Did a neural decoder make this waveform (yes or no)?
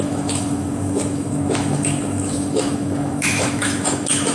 yes